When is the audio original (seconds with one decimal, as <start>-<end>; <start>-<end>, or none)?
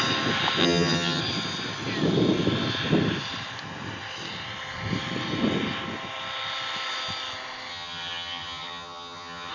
0.0-0.6; 1.2-7.7